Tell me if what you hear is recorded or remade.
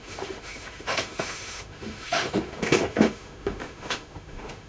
remade